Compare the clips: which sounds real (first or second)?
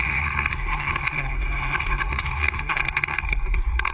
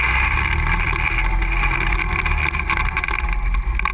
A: second